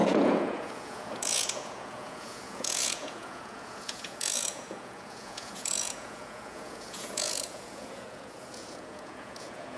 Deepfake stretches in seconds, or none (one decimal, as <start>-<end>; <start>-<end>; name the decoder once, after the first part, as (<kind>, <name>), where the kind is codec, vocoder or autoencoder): 0.0-9.8 (vocoder, Vocos)